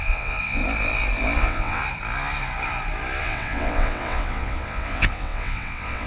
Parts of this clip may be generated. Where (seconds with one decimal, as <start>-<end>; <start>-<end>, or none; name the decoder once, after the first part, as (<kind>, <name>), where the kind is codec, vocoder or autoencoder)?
0.0-0.6 (vocoder, WaveNeXt); 1.4-1.8; 3.2-6.1